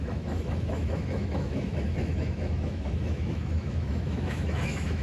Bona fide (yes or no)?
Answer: no